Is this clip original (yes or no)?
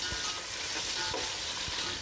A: yes